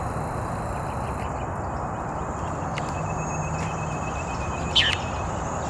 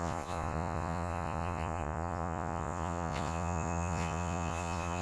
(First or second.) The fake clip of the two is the second